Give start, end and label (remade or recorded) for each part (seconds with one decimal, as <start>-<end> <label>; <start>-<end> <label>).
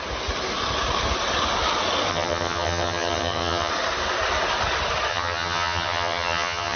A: 0.0-2.1 recorded; 2.1-3.7 remade; 3.7-5.1 recorded; 5.1-6.8 remade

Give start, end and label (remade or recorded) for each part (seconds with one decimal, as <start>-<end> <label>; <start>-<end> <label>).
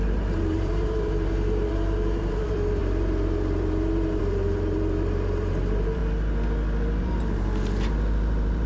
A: 0.0-6.0 remade; 6.0-7.0 recorded; 7.0-8.7 remade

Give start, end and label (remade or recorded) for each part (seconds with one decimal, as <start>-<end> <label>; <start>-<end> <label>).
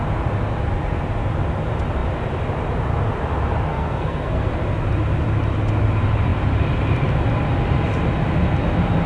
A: 0.0-3.7 recorded; 3.7-4.5 remade; 4.5-9.1 recorded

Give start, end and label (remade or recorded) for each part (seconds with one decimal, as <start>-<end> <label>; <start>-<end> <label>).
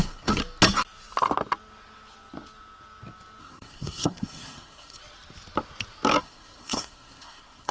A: 0.0-0.4 remade; 0.4-3.4 recorded; 3.4-5.0 remade; 5.0-6.2 recorded; 6.2-7.7 remade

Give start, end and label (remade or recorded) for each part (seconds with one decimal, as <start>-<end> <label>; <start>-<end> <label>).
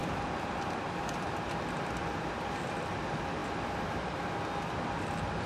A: 0.0-1.3 remade; 1.3-5.5 recorded